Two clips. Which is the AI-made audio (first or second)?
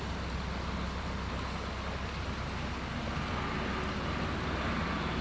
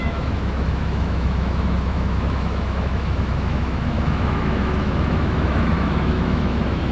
second